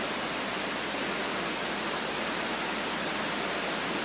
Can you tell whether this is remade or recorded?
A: recorded